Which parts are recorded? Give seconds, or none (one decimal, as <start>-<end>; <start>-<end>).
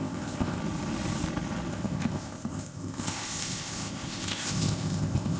0.6-1.7